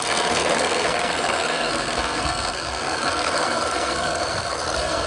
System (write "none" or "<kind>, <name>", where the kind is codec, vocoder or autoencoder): codec, SNAC